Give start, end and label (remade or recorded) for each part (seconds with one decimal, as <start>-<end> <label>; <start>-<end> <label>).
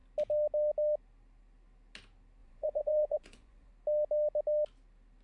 0.0-2.4 recorded; 2.4-3.7 remade; 3.7-5.2 recorded